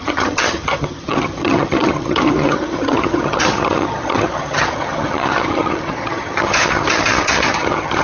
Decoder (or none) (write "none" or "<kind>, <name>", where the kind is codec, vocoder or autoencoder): vocoder, HiFi-GAN